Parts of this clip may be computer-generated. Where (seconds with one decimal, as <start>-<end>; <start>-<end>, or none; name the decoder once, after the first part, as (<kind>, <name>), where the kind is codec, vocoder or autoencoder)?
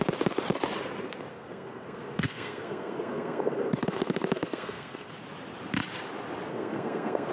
1.3-5.1 (codec, SNAC); 6.5-7.3